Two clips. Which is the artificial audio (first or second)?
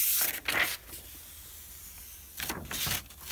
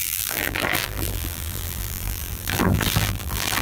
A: second